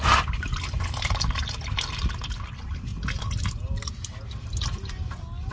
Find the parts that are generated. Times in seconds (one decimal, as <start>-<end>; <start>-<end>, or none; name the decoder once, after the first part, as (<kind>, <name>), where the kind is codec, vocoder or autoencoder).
none